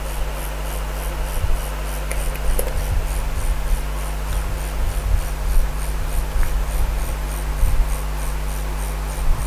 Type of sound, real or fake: real